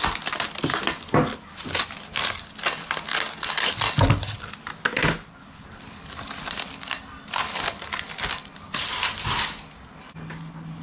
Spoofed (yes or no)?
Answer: no